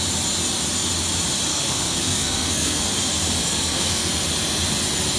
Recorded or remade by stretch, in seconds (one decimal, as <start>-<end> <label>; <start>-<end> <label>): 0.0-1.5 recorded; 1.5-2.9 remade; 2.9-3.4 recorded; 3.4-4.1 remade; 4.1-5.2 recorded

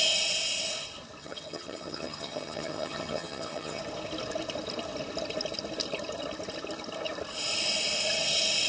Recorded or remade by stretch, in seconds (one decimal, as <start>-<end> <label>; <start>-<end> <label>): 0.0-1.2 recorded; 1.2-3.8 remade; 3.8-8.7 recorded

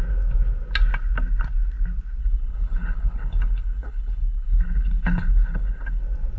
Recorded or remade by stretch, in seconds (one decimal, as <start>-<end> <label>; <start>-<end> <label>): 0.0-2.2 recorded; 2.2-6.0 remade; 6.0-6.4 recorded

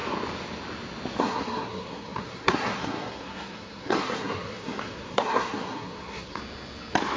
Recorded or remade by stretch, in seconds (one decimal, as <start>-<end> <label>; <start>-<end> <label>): 0.0-1.2 recorded; 1.2-6.4 remade; 6.4-7.2 recorded

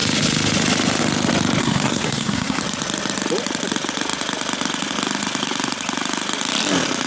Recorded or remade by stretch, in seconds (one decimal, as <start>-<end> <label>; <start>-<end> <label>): 0.0-1.6 recorded; 1.6-2.6 remade; 2.6-7.1 recorded